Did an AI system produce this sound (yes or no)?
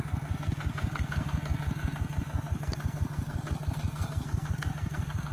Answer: yes